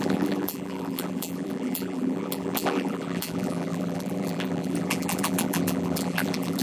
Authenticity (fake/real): fake